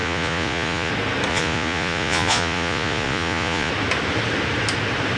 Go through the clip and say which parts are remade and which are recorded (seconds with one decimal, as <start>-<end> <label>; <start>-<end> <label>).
0.0-0.9 remade; 0.9-1.3 recorded; 1.3-3.7 remade; 3.7-5.2 recorded